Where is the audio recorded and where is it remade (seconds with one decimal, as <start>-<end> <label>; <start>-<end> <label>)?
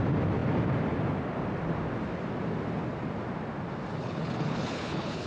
0.0-3.9 recorded; 3.9-5.3 remade